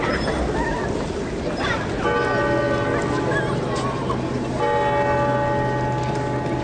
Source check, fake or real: real